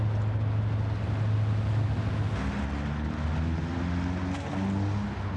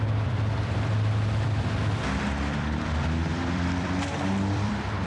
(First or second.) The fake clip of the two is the second